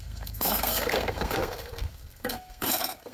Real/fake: fake